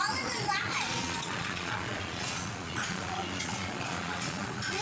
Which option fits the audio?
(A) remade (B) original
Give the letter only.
A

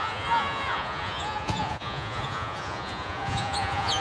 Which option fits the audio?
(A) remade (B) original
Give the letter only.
A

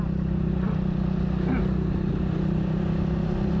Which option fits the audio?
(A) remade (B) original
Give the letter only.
B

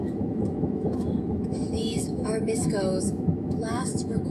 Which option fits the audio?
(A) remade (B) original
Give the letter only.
A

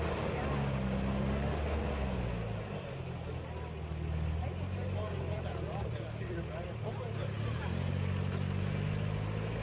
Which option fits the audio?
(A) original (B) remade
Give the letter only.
A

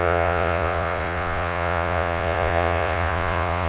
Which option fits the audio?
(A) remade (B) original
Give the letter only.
A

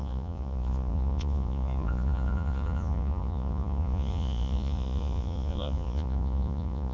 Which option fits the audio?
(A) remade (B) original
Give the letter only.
A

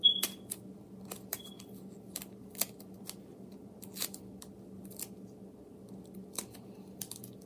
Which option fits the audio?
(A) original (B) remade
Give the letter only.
A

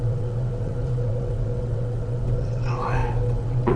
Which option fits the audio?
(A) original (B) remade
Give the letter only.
B